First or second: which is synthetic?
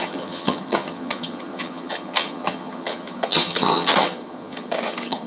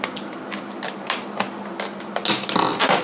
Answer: first